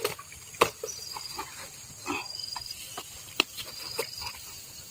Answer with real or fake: fake